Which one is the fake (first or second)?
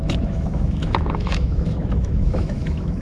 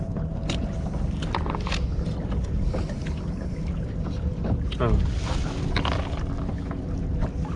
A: first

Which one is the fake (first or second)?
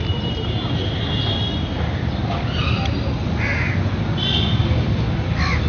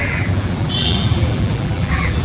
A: second